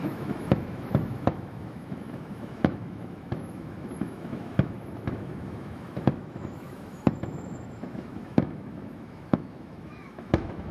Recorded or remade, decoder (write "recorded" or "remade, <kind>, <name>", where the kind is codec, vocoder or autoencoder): remade, autoencoder, DAC-VAE